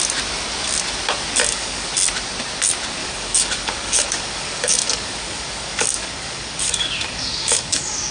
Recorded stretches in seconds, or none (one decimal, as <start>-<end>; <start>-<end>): 0.0-1.4; 1.9-3.0

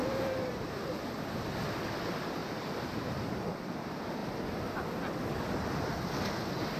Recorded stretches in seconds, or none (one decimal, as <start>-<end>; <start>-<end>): 0.7-2.4; 3.7-6.8

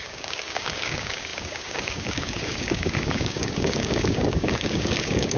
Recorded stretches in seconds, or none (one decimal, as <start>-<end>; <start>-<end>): none

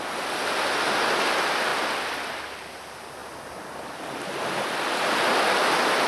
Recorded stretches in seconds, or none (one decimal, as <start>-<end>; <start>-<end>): 0.0-6.1

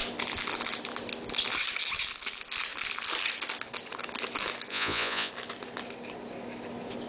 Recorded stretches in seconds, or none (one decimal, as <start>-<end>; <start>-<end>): 0.0-4.7; 5.3-7.1

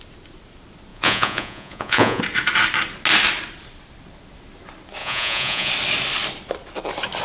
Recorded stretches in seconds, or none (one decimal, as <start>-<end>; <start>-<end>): 0.0-0.9; 2.2-5.0; 5.7-7.2

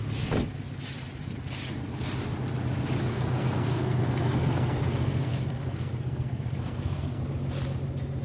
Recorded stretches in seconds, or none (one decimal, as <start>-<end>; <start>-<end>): 0.0-3.1; 7.2-8.2

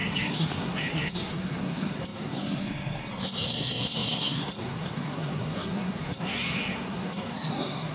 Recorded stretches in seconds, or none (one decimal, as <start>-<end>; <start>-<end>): none